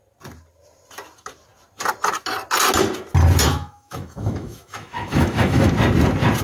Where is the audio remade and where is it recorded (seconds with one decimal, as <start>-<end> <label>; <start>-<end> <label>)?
0.0-3.5 recorded; 3.5-5.7 remade; 5.7-6.4 recorded